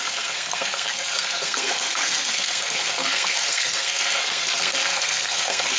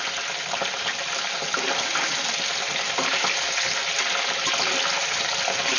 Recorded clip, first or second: second